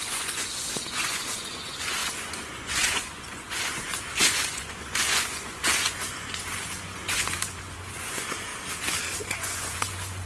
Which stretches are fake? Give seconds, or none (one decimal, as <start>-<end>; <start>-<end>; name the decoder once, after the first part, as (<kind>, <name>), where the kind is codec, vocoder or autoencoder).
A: 0.0-8.5 (vocoder, Vocos); 9.2-10.3